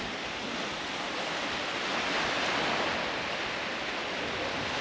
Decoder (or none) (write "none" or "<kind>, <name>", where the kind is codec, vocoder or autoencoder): none